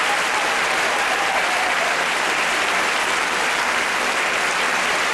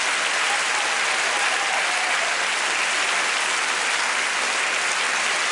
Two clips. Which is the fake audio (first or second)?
first